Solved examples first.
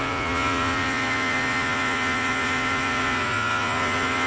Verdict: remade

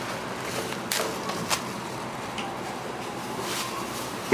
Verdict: recorded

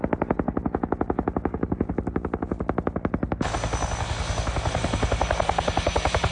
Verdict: recorded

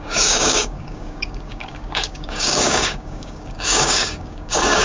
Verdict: remade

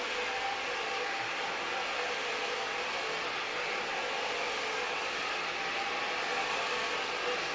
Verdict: recorded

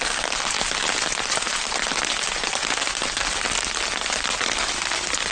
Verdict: recorded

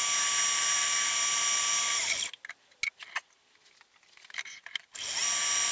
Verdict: recorded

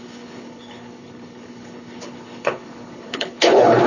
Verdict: remade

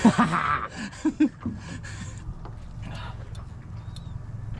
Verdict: recorded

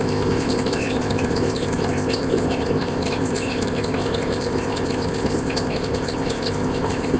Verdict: remade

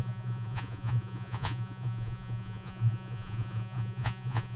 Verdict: remade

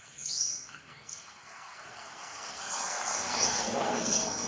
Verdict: remade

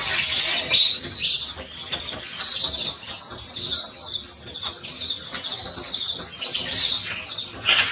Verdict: recorded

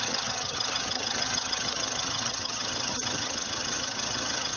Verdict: remade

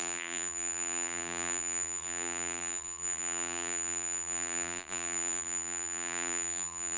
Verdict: remade